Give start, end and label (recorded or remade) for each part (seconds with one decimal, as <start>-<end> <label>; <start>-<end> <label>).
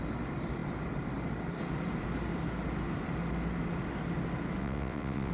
0.0-4.6 recorded; 4.6-5.3 remade